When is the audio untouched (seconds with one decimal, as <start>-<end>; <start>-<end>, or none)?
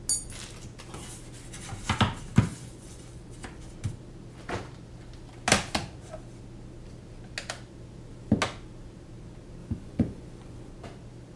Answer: 0.0-2.5; 3.3-9.6; 10.7-11.4